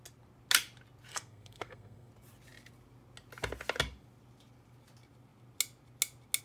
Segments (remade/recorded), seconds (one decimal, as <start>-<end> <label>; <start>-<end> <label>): 0.0-1.1 recorded; 1.1-2.1 remade; 2.1-6.4 recorded